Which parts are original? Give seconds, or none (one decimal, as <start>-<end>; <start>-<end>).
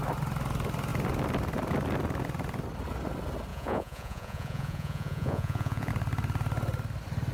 0.0-3.5; 5.9-7.3